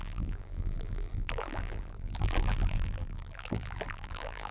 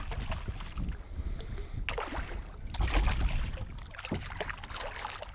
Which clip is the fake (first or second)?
first